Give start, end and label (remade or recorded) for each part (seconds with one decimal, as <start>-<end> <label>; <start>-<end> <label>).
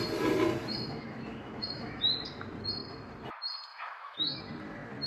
0.0-0.6 recorded; 0.6-2.0 remade; 2.0-3.7 recorded; 3.7-4.4 remade; 4.4-5.1 recorded